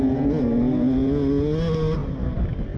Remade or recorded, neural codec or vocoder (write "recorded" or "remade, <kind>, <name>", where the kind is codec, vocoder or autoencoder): recorded